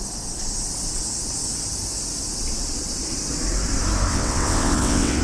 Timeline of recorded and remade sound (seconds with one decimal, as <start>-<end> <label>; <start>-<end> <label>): 0.0-4.1 recorded; 4.1-5.2 remade